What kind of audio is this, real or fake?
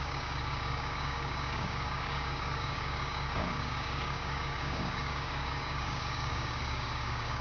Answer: fake